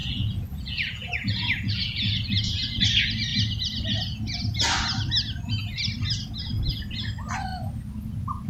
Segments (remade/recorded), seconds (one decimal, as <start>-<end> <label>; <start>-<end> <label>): 0.0-2.8 remade; 2.8-8.5 recorded